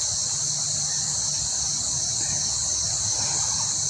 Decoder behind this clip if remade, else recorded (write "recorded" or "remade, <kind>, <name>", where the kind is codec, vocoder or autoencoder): recorded